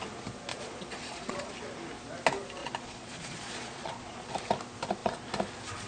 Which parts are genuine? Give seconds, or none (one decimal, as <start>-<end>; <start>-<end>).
0.0-0.5; 1.5-2.6; 4.3-5.9

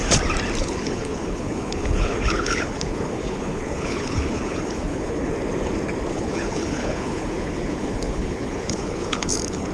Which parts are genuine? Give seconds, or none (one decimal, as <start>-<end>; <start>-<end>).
0.0-0.6; 5.3-6.1